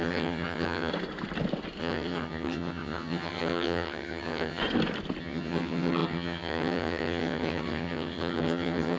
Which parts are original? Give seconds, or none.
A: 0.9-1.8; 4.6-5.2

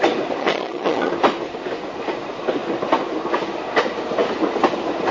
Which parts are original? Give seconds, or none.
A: 0.0-0.4; 1.1-5.1